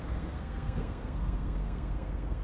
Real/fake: fake